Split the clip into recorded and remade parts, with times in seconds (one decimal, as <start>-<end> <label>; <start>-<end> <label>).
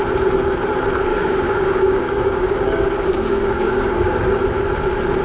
0.0-1.1 recorded; 1.1-4.2 remade; 4.2-5.2 recorded